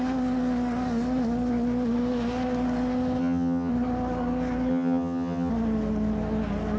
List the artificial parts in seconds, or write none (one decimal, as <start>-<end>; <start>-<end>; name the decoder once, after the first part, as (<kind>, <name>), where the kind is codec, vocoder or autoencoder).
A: 3.2-3.7 (vocoder, HiFi-GAN); 4.7-5.5